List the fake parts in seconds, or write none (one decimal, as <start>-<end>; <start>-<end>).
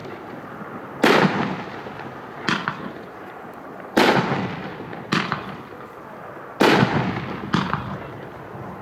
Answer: none